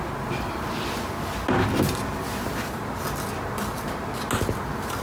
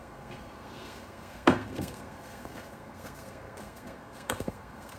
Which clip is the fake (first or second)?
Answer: second